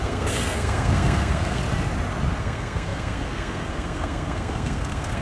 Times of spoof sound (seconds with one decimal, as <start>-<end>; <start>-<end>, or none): 0.0-1.6; 2.4-5.2